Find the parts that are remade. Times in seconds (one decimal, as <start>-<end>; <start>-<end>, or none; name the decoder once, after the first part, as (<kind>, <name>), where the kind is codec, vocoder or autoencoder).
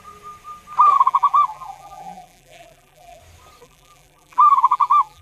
0.9-3.2 (vocoder, BigVGAN v2); 3.6-5.2